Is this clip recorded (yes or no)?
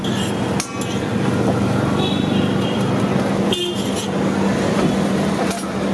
yes